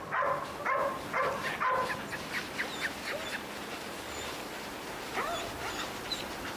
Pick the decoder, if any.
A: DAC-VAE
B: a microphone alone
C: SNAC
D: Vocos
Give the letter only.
B